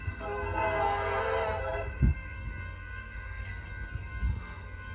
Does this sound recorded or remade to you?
remade